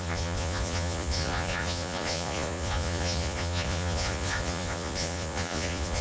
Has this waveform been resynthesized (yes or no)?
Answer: yes